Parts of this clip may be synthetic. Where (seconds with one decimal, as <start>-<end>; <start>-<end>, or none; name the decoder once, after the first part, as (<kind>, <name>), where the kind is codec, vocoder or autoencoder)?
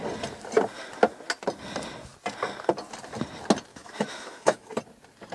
3.7-4.7 (autoencoder, DAC-VAE)